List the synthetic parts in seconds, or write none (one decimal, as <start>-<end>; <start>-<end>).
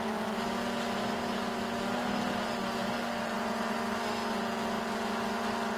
none